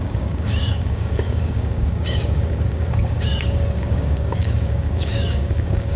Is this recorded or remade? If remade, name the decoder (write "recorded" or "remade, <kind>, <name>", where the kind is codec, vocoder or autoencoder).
remade, codec, DAC